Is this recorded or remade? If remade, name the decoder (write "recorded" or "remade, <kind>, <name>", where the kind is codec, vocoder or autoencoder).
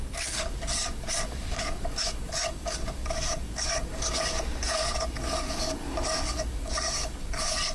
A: remade, codec, DAC